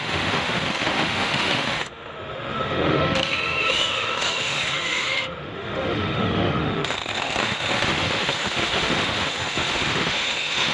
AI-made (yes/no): yes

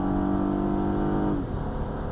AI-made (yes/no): no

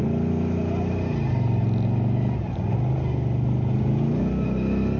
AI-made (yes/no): no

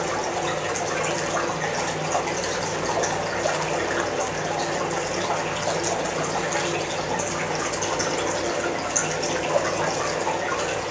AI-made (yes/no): no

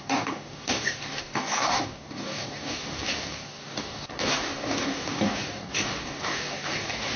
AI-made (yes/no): yes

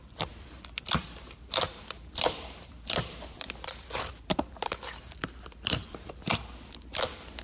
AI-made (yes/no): yes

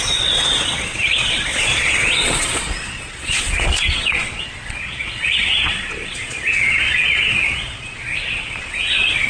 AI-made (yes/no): yes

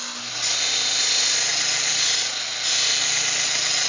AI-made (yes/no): no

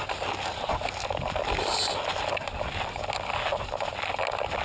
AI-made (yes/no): no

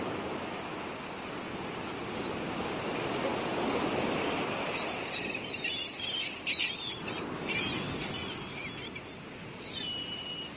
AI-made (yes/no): no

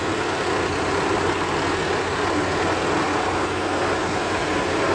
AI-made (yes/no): no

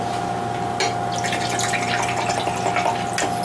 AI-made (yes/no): no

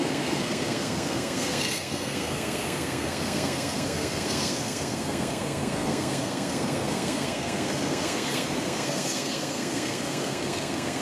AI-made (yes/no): yes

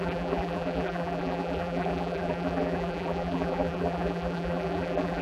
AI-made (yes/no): yes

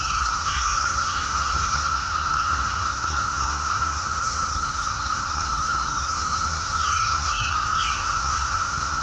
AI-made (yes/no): yes